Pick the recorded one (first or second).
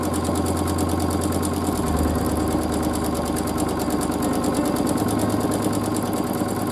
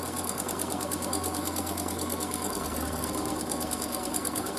first